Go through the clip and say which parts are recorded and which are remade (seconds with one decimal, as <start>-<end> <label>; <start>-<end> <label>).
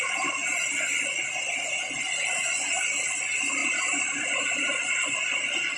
0.0-5.8 recorded